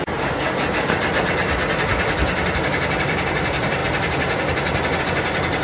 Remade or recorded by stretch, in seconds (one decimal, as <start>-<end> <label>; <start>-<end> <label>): 0.0-1.9 remade; 1.9-2.7 recorded; 2.7-3.8 remade; 3.8-5.0 recorded; 5.0-5.6 remade